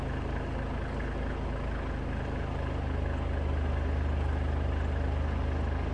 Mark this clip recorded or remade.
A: recorded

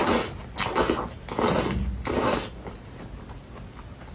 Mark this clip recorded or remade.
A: recorded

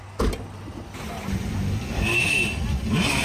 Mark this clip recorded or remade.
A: recorded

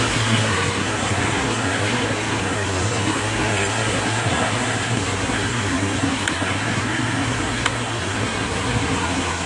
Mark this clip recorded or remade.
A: remade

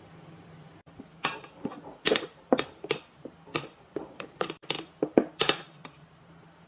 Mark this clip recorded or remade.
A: remade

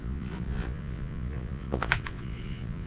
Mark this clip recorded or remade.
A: remade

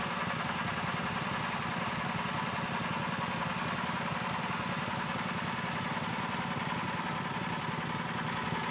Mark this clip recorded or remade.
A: recorded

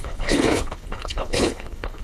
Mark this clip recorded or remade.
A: remade